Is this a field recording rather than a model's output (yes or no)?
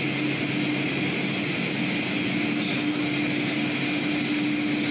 yes